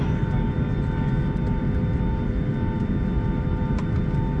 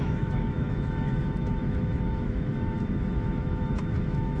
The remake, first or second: second